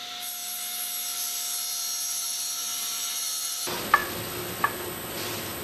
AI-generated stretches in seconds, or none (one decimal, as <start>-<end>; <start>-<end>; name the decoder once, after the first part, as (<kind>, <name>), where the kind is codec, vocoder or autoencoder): none